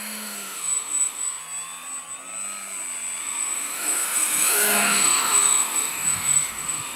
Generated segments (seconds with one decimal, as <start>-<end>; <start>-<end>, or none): 0.0-1.4; 3.2-7.0